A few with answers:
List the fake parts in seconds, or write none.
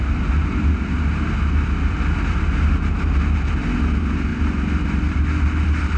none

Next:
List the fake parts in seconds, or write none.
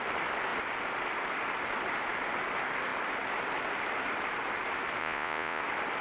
5.0-5.6 (vocoder, Vocos)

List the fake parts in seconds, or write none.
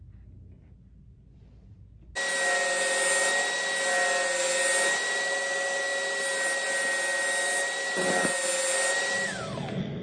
none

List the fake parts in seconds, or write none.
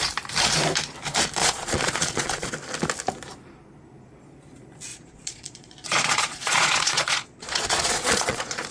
1.4-2.5 (vocoder, Vocos); 4.9-8.7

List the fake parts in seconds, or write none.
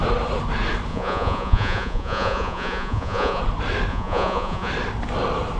0.9-3.4 (vocoder, Vocos); 3.9-4.7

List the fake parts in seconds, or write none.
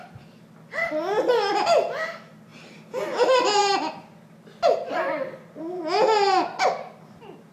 none